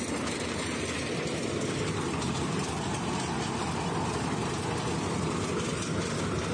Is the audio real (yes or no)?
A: yes